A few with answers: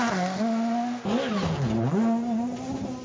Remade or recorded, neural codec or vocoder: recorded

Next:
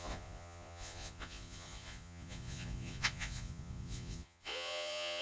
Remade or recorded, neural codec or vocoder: remade, vocoder, Vocos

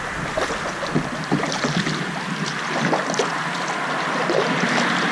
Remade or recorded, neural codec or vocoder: recorded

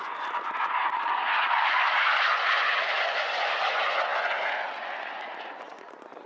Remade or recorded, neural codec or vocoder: remade, vocoder, Vocos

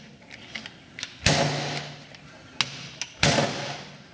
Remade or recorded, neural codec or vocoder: recorded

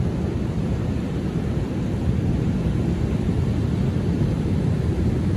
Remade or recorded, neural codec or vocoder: recorded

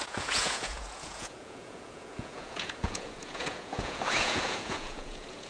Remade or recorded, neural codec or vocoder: remade, vocoder, Vocos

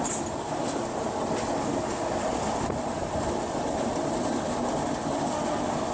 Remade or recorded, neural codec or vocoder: recorded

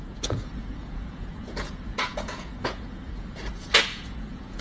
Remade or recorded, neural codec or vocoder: remade, vocoder, Vocos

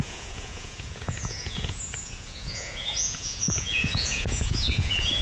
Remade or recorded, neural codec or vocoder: remade, vocoder, Vocos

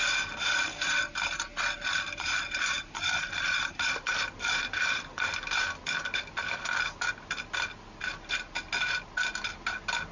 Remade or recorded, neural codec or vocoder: recorded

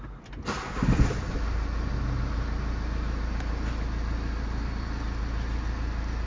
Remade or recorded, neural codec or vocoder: recorded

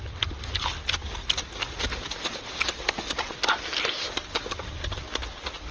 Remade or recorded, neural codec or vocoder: recorded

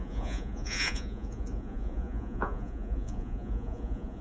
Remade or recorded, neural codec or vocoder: remade, vocoder, Vocos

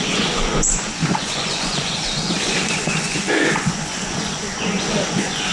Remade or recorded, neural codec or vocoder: remade, vocoder, Vocos